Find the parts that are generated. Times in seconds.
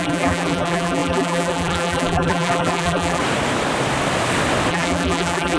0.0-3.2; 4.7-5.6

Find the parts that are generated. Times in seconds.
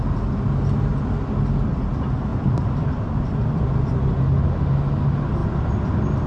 2.3-3.9; 5.4-6.3